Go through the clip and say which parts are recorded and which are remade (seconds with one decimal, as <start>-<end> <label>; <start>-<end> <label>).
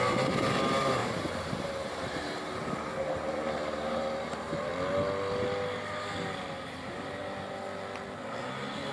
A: 0.0-4.7 remade; 4.7-6.6 recorded; 6.6-7.2 remade; 7.2-8.9 recorded